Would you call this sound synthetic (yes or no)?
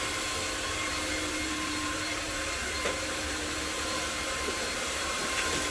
yes